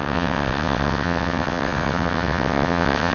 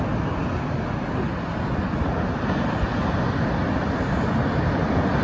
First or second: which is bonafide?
second